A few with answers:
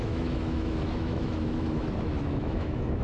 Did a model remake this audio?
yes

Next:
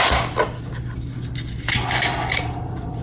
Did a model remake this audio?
no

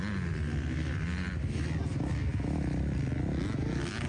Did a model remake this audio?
no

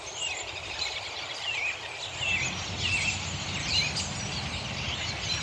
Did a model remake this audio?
no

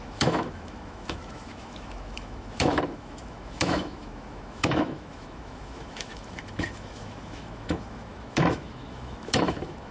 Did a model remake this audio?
yes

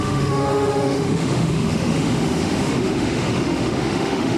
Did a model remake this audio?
yes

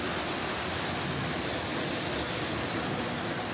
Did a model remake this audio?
no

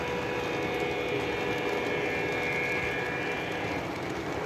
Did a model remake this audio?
no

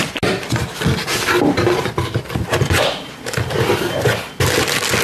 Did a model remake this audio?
no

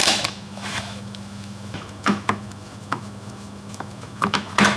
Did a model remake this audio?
yes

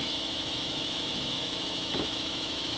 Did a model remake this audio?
yes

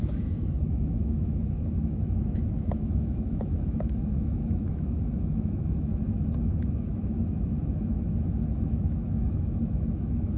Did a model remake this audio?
yes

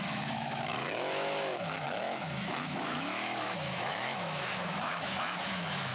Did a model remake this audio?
yes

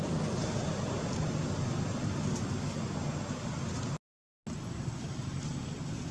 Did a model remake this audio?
no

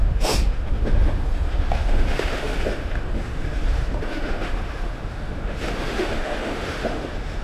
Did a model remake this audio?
yes